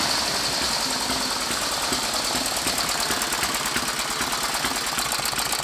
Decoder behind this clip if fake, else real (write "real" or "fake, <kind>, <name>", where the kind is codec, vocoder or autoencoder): real